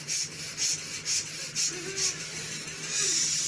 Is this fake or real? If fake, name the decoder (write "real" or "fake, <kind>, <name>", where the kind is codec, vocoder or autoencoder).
real